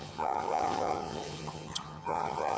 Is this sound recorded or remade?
remade